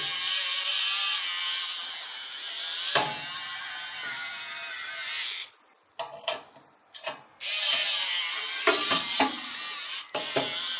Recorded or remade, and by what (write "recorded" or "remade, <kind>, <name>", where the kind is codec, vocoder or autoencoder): recorded